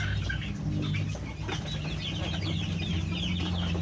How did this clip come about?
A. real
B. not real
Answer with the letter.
A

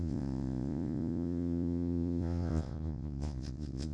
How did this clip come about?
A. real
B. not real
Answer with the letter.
B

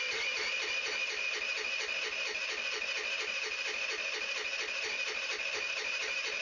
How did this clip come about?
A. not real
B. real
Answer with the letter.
B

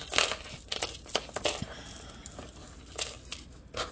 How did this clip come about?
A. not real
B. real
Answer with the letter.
B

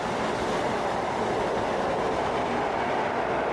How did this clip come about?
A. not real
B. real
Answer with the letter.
B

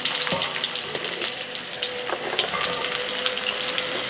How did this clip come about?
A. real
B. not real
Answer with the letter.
A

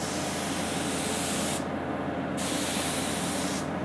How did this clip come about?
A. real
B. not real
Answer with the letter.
A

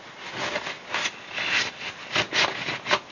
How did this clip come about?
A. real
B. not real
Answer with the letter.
A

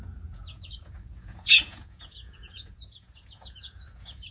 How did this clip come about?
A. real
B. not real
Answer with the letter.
B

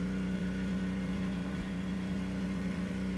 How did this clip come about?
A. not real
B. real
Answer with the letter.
A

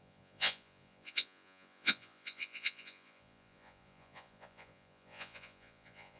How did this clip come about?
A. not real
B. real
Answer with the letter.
A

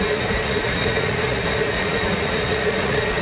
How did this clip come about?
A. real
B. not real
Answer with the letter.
B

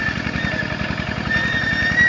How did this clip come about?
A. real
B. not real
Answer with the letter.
A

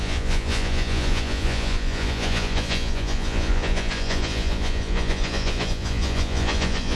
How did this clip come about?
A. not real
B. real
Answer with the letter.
A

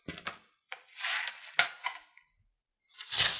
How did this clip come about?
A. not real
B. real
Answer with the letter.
B